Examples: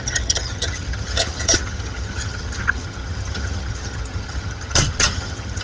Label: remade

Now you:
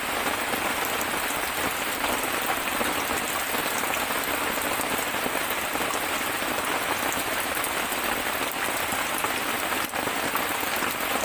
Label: recorded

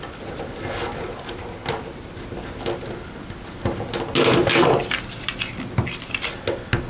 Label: recorded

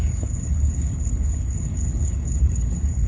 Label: remade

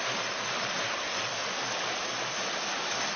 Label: recorded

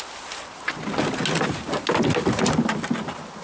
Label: recorded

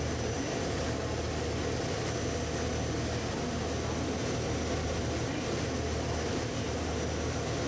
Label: recorded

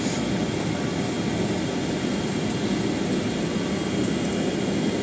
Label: recorded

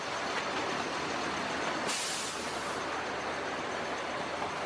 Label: recorded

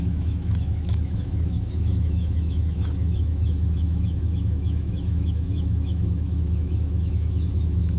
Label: remade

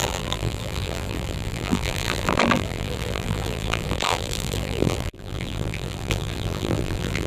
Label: remade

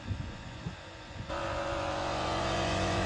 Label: remade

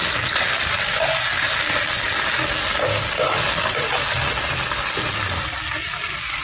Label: recorded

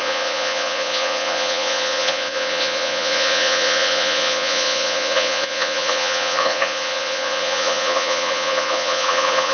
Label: remade